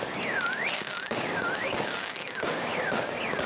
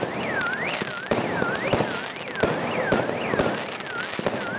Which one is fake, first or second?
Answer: first